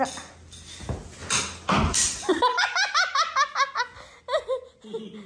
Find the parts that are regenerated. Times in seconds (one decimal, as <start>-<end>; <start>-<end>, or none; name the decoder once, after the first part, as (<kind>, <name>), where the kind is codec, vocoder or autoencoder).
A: none